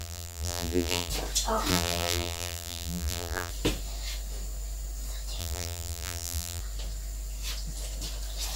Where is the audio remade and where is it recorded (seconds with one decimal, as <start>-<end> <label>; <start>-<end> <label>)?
0.0-1.1 remade; 1.1-1.7 recorded; 1.7-3.5 remade; 3.5-5.4 recorded; 5.4-6.6 remade; 6.6-8.6 recorded